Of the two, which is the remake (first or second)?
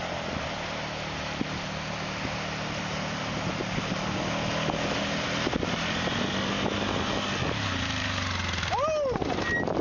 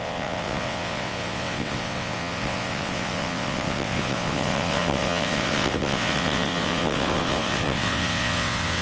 second